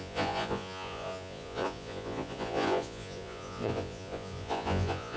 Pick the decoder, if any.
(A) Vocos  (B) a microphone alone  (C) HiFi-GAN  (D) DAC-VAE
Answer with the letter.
A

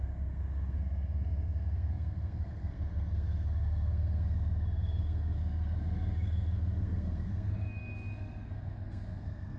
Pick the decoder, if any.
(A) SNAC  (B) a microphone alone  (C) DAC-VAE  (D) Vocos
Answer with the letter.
A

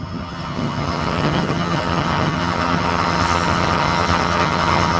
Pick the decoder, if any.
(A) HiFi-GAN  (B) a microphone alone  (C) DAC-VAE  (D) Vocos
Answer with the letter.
A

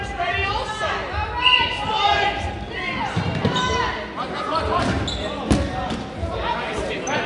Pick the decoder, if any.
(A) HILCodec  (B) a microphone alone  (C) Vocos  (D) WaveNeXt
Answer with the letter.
B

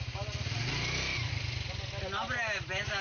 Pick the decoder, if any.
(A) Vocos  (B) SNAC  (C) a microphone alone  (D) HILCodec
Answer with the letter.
C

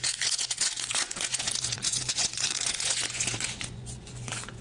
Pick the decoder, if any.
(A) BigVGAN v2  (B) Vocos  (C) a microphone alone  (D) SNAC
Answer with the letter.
B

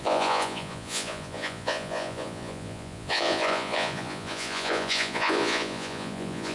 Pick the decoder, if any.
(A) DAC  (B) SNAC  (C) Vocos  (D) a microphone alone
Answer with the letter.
C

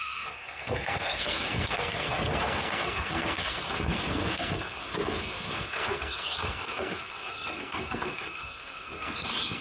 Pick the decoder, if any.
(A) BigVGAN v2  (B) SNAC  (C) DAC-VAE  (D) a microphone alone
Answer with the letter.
B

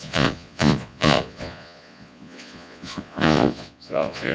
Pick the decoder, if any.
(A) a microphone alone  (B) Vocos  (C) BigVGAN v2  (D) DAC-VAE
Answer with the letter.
B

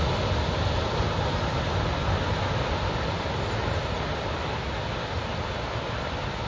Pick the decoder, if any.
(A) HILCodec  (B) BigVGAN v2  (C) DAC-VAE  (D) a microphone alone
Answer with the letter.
D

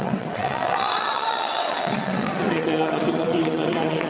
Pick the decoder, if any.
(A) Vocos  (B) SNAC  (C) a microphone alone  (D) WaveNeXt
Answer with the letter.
D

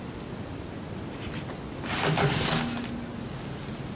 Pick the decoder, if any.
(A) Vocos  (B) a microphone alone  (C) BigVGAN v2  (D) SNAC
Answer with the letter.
B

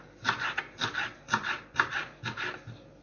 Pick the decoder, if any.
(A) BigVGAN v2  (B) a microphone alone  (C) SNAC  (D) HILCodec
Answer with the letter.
B